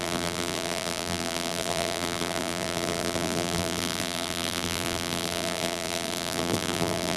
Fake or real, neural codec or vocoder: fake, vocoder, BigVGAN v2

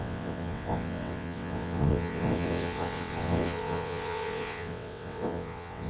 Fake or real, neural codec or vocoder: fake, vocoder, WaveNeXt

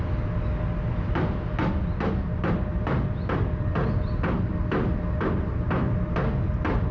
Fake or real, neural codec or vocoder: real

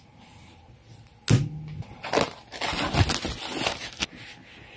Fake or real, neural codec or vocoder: real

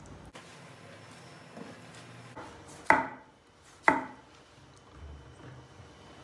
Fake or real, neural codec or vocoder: real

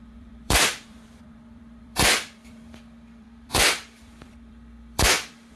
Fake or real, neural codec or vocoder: fake, vocoder, BigVGAN v2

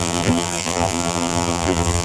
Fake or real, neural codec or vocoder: fake, vocoder, BigVGAN v2